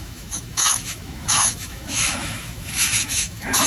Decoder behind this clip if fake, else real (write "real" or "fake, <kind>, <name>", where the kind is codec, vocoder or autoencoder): fake, autoencoder, DAC-VAE